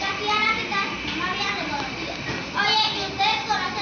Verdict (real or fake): real